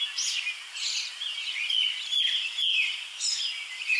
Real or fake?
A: real